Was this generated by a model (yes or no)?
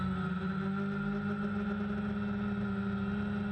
no